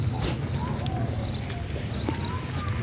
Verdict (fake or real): real